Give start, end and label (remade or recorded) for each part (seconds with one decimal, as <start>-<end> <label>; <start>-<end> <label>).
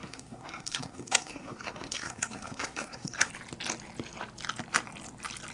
0.0-3.3 remade; 3.3-5.5 recorded